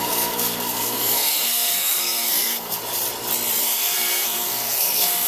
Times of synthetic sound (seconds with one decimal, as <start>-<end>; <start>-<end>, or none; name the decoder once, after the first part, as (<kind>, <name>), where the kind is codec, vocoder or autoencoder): 0.0-2.8 (codec, SNAC); 3.6-5.3